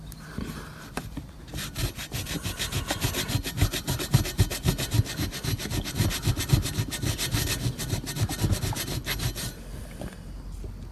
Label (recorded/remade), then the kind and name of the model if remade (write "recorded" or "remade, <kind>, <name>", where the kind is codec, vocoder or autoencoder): recorded